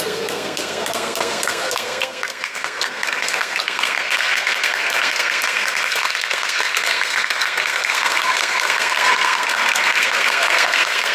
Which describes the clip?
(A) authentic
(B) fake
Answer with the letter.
B